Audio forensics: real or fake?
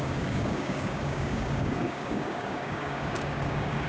fake